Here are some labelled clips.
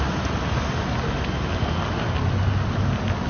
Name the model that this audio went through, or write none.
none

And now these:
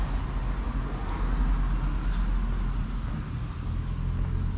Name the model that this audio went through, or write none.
none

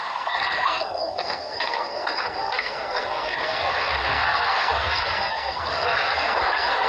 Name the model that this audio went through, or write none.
codec, SNAC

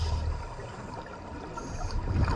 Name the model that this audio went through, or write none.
none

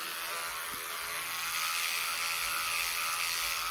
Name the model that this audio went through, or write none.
none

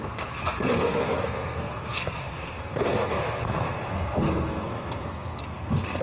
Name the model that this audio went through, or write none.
codec, SNAC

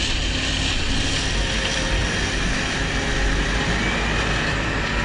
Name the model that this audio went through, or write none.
none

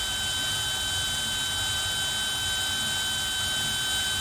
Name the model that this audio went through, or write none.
none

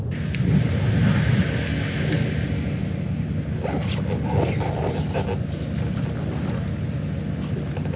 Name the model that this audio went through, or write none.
none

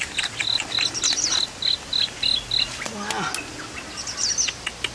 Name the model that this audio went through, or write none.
none